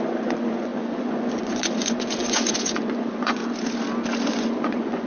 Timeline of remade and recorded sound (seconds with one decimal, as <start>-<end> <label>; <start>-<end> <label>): 0.0-3.4 remade; 3.4-4.3 recorded; 4.3-5.1 remade